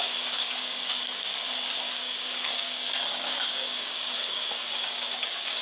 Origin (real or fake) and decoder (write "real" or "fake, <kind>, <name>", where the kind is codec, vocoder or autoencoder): fake, codec, DAC